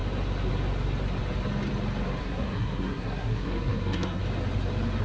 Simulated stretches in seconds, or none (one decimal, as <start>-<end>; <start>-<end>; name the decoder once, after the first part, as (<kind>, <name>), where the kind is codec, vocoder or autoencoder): 2.2-4.2 (codec, SNAC)

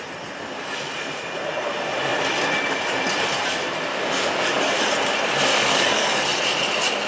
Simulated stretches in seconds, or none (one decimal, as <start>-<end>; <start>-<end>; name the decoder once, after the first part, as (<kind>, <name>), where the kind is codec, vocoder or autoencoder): 3.9-4.8 (codec, DAC); 5.5-6.2

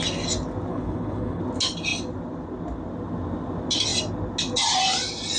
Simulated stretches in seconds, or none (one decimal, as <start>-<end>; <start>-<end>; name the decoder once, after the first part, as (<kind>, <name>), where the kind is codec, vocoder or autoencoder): 0.7-1.4 (codec, HILCodec)

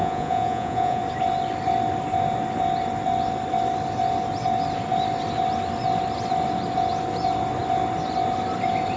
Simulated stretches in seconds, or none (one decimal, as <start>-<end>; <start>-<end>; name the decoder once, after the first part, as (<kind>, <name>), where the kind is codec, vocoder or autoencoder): 0.0-1.0 (vocoder, Vocos)